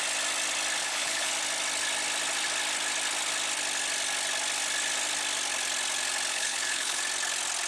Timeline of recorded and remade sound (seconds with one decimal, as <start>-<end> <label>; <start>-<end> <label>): 0.0-0.8 recorded; 0.8-1.3 remade; 1.3-6.3 recorded; 6.3-7.0 remade; 7.0-7.7 recorded